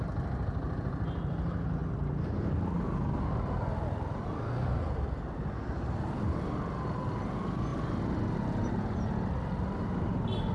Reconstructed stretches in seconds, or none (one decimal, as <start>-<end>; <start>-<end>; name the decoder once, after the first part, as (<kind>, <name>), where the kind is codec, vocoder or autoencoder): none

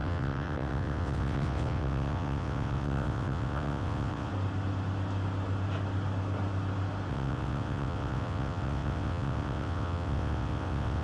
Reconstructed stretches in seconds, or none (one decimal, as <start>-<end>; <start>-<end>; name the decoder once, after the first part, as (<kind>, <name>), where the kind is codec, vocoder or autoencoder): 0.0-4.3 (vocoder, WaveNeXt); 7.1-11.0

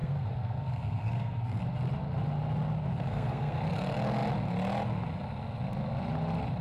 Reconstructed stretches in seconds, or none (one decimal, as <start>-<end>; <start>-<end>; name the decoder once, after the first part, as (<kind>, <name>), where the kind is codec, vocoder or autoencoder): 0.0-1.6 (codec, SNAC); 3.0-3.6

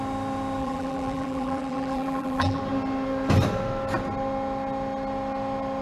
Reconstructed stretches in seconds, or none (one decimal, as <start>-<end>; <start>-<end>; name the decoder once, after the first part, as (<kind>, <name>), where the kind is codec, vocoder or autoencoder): 0.6-2.6 (vocoder, BigVGAN v2)

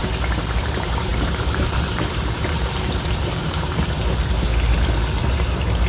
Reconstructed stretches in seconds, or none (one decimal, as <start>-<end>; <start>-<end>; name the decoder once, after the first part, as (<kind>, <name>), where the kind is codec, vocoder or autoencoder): 0.6-4.5 (vocoder, BigVGAN v2); 5.2-5.9

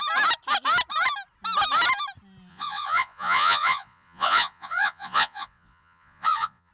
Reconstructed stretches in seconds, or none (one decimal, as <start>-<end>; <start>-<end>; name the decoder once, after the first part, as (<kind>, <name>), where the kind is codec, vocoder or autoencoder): 2.5-6.7 (vocoder, Vocos)